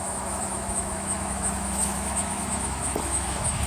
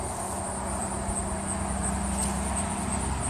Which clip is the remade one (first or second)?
first